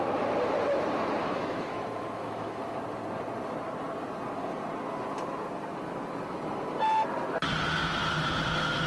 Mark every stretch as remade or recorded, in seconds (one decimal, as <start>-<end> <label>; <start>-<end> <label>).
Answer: 0.0-1.2 recorded; 1.2-2.8 remade; 2.8-8.9 recorded